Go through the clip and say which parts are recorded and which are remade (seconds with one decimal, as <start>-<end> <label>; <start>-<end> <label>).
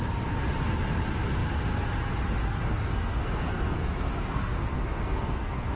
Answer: 0.0-2.6 recorded; 2.6-5.8 remade